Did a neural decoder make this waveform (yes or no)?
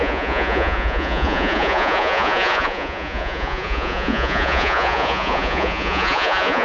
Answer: yes